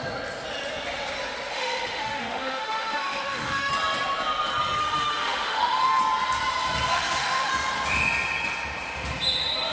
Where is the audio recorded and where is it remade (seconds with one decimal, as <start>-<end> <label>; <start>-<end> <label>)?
0.0-1.5 recorded; 1.5-3.7 remade; 3.7-4.8 recorded; 4.8-6.0 remade; 6.0-6.9 recorded; 6.9-7.5 remade; 7.5-9.7 recorded